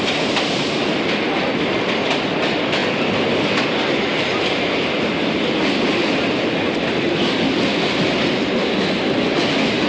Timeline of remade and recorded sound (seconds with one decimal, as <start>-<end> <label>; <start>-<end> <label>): 0.0-9.9 recorded